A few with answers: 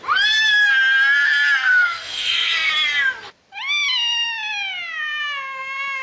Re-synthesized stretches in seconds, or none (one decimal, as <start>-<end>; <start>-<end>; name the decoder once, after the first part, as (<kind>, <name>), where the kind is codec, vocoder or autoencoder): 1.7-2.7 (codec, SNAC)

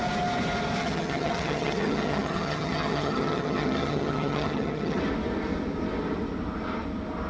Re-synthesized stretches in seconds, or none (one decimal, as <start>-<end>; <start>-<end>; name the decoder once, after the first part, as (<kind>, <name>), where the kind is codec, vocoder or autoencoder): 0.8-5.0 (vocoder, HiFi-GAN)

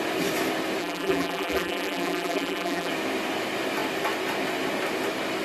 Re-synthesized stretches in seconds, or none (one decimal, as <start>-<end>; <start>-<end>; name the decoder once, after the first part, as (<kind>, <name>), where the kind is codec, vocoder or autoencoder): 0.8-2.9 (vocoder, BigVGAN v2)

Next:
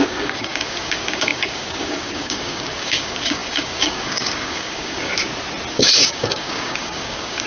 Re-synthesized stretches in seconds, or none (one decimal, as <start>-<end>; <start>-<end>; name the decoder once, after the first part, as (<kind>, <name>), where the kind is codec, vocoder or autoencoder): 0.0-5.1 (codec, DAC); 5.7-7.5

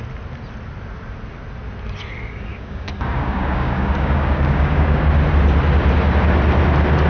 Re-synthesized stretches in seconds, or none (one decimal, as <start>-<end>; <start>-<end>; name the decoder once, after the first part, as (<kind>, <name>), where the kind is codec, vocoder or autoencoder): 2.5-5.1 (codec, DAC)

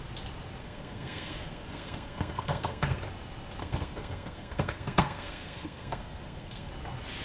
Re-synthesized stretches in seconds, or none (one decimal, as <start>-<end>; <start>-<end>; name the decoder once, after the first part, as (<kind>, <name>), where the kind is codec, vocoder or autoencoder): 0.6-3.0 (codec, SNAC); 3.6-6.7